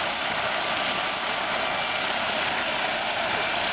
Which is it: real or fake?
real